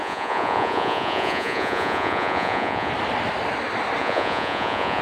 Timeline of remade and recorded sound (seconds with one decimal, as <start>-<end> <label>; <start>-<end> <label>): 0.0-2.9 remade; 2.9-4.0 recorded; 4.0-5.0 remade